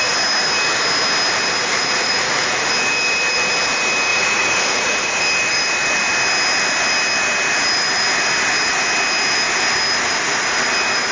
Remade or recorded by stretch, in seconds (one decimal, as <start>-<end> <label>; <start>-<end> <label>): 0.0-1.7 recorded; 1.7-2.7 remade; 2.7-4.1 recorded; 4.1-5.2 remade; 5.2-11.1 recorded